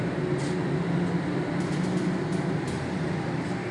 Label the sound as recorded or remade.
recorded